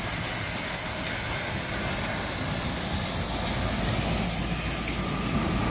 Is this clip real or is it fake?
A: real